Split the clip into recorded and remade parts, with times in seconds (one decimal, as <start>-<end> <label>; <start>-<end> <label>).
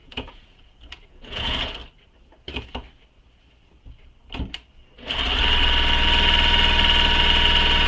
0.0-1.8 remade; 1.8-7.9 recorded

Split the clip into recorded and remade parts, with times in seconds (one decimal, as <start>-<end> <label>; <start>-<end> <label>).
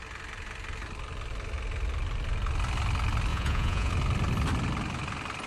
0.0-3.3 recorded; 3.3-3.9 remade; 3.9-5.5 recorded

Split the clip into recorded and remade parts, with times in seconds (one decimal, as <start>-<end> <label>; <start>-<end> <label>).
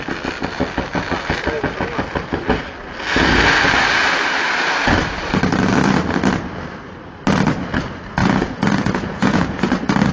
0.0-8.2 recorded; 8.2-9.7 remade; 9.7-10.1 recorded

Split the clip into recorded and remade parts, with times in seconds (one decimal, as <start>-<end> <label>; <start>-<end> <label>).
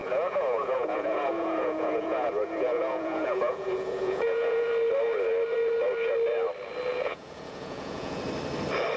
0.0-4.7 remade; 4.7-6.9 recorded; 6.9-8.2 remade; 8.2-9.0 recorded